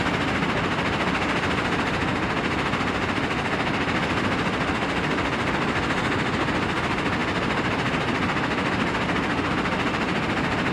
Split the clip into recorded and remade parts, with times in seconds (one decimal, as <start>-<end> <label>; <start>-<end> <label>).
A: 0.0-10.7 recorded